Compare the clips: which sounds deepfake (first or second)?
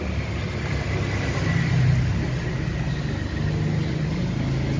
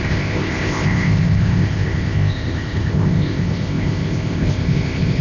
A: second